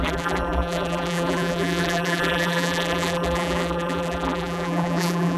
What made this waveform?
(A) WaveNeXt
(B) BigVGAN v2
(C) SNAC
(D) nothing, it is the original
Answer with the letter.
B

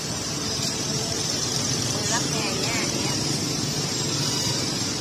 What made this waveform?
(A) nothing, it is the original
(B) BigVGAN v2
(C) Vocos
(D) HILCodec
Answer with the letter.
B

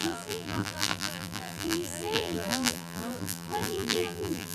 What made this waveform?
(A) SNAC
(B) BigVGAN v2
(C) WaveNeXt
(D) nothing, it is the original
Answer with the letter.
B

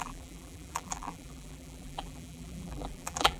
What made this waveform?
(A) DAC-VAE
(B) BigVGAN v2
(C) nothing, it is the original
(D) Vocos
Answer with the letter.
B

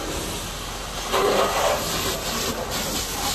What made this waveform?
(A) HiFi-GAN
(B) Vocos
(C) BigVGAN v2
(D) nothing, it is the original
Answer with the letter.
D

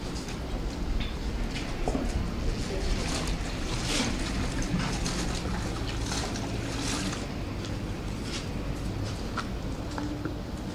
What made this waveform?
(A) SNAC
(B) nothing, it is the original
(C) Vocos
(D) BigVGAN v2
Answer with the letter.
B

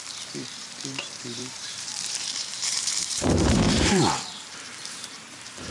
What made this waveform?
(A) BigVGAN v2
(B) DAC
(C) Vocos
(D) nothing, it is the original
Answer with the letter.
A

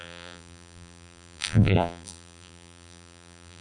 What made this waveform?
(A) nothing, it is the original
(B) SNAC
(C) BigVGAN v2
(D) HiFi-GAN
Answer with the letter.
C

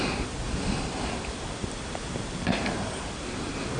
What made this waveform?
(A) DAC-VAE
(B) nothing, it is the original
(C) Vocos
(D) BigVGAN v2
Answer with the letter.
B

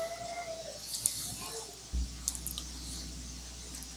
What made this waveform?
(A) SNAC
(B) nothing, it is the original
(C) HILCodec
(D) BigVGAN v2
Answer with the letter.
B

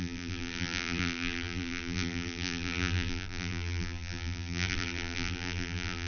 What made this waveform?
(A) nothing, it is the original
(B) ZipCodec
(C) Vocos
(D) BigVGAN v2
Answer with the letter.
D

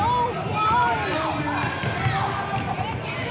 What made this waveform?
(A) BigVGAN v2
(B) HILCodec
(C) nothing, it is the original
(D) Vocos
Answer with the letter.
C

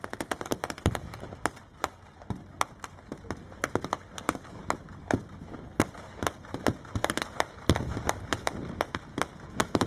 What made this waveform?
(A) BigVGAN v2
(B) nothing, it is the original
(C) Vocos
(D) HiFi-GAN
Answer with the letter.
B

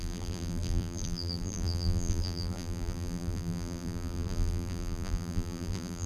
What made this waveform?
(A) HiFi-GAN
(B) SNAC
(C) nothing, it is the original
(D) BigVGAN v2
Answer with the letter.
D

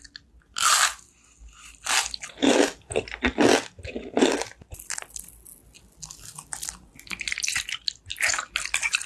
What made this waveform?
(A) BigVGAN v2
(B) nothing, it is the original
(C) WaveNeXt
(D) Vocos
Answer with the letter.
B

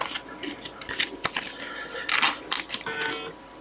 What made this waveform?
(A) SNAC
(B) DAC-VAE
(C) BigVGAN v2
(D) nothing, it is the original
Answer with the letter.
D